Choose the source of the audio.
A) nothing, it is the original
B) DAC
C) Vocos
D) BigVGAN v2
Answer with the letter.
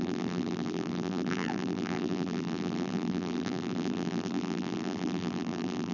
D